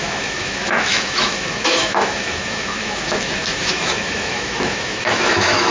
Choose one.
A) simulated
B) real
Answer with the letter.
A